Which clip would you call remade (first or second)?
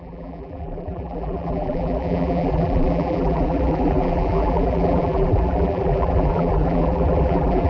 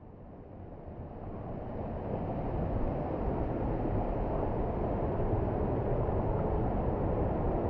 first